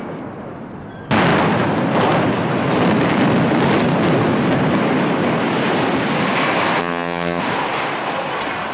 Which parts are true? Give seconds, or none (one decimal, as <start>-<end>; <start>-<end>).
0.0-6.8; 7.4-8.7